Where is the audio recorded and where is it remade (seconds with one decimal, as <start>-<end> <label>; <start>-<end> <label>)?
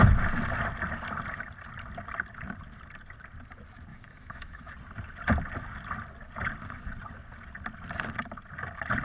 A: 0.0-3.9 recorded; 3.9-4.7 remade; 4.7-9.0 recorded